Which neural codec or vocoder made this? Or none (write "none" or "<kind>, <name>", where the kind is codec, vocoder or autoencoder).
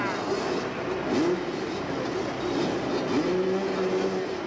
none